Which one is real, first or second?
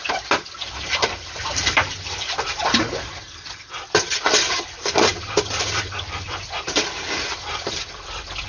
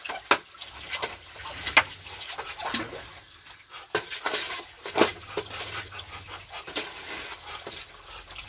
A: second